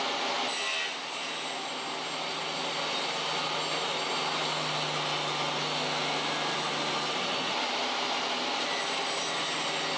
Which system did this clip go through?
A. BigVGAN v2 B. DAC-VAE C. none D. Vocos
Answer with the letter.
C